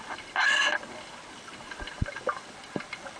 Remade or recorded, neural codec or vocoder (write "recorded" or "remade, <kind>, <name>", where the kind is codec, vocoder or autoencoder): recorded